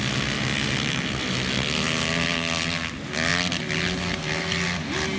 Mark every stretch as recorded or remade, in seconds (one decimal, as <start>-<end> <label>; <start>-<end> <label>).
0.0-5.2 recorded